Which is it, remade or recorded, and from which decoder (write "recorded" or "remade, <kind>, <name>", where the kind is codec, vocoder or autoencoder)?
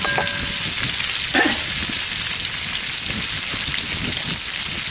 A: recorded